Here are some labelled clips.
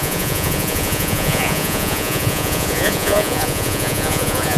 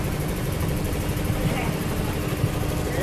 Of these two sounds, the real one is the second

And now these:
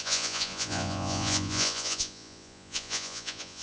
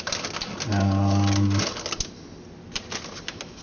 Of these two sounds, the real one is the second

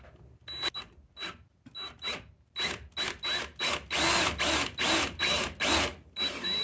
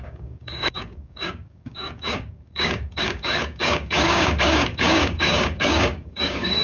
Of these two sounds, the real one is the first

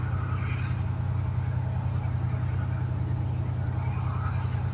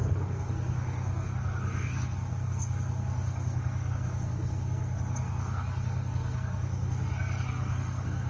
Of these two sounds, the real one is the first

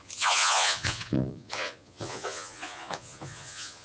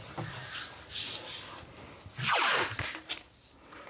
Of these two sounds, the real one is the second